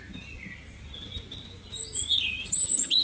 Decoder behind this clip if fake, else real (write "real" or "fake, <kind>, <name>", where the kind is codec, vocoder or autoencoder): real